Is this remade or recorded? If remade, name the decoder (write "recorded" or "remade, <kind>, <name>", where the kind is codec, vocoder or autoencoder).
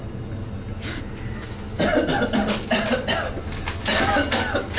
recorded